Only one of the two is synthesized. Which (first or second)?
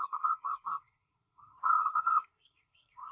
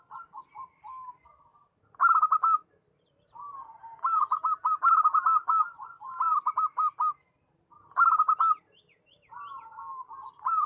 first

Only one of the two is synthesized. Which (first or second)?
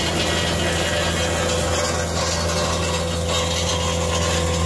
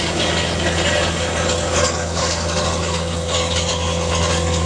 second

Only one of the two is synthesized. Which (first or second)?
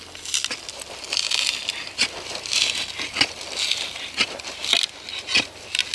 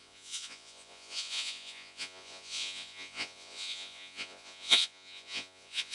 second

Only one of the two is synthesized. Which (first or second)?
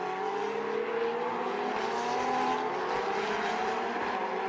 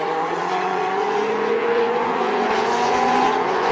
second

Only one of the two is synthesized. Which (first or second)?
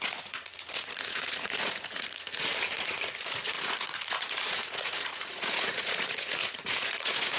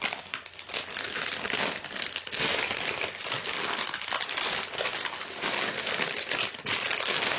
first